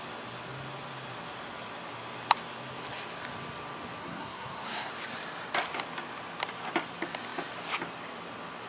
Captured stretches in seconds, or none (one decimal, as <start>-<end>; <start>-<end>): 0.0-4.0; 4.9-8.7